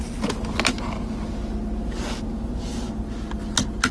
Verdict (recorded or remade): recorded